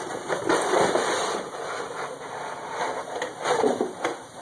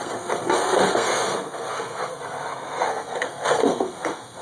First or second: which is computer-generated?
second